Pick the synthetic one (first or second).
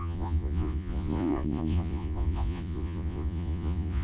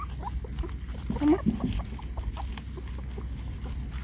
first